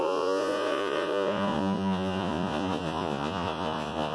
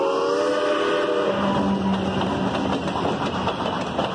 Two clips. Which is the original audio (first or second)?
second